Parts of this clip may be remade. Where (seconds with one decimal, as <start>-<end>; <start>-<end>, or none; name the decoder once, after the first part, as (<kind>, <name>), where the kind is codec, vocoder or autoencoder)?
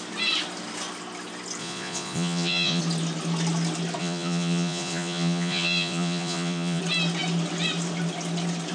1.6-2.8 (vocoder, Vocos); 4.0-6.8